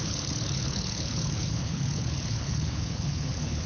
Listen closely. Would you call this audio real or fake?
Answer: fake